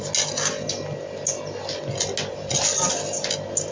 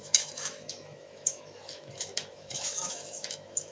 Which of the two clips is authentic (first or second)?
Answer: first